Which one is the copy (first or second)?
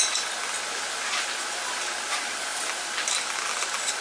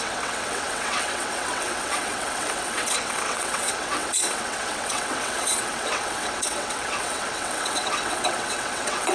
second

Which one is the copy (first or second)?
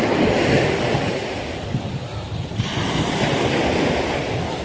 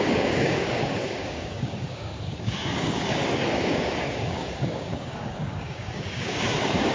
second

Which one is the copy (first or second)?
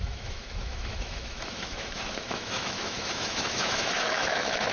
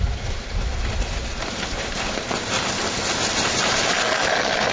first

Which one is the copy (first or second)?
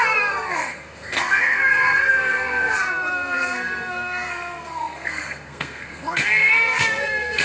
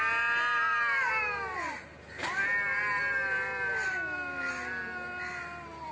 first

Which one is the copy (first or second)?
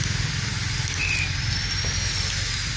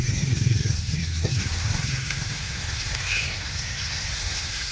second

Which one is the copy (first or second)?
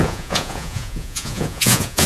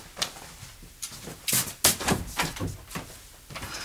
first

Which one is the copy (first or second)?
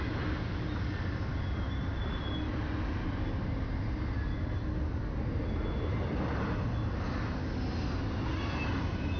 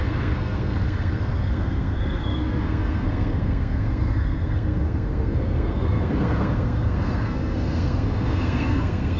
second